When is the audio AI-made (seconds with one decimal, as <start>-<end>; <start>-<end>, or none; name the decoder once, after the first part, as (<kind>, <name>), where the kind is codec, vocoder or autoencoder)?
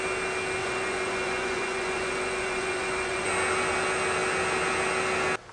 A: 0.6-3.3 (vocoder, Vocos)